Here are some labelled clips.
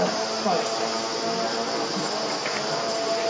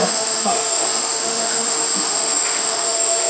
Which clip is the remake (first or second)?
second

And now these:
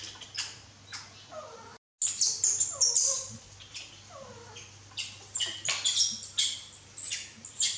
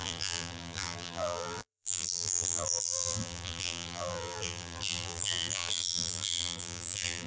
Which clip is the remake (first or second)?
second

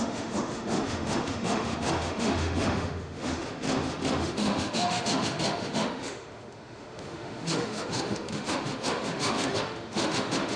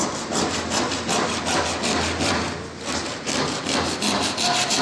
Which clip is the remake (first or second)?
first